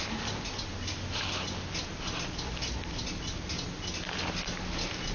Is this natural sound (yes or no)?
yes